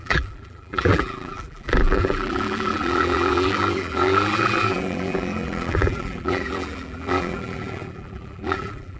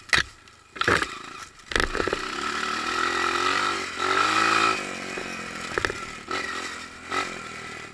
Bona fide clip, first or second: second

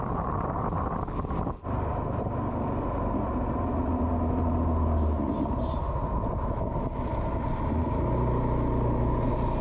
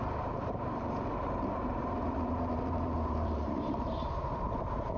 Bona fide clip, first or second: first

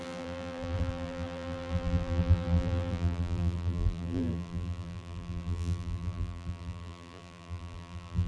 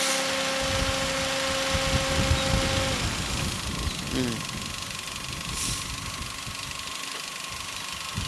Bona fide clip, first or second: second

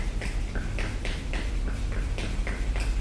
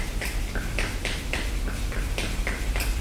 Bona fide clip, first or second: first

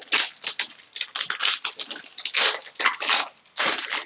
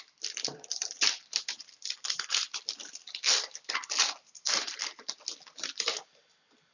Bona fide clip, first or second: first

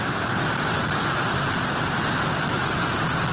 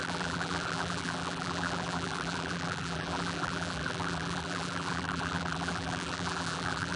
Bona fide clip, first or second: first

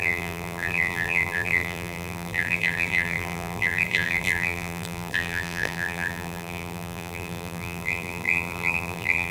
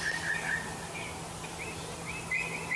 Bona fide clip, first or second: second